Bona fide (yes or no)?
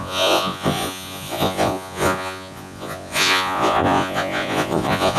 no